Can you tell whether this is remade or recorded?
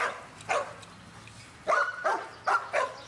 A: recorded